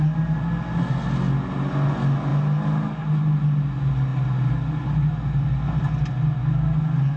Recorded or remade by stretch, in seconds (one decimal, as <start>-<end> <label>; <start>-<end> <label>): 0.0-7.2 recorded